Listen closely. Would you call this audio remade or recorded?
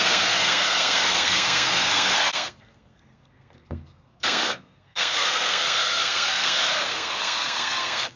remade